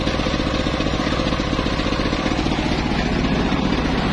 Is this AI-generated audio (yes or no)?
no